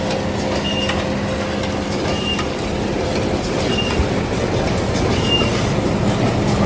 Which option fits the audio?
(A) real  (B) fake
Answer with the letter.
A